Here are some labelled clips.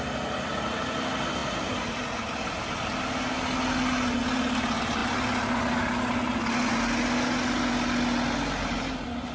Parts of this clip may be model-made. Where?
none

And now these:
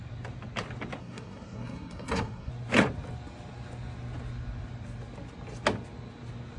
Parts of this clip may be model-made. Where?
1.0-2.5 (codec, SNAC)

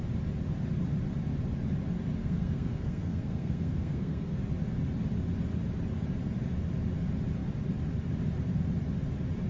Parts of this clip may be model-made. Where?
2.2-4.4 (codec, SNAC)

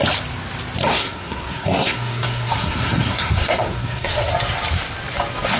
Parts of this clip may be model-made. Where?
0.9-4.3 (codec, SNAC)

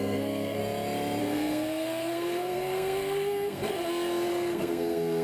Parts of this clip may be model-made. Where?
0.0-0.6 (codec, SNAC); 1.2-3.6; 4.3-5.2

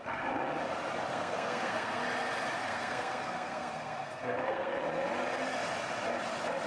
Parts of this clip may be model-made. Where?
1.1-2.0 (codec, SNAC); 2.6-4.7

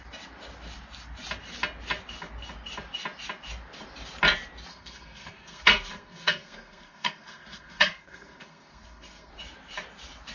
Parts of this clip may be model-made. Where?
4.7-9.3 (codec, SNAC)

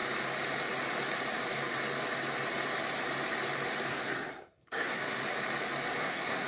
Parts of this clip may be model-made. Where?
3.9-5.2 (codec, SNAC); 6.0-6.5